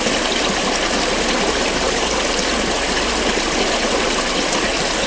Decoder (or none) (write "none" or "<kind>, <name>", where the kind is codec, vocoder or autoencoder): none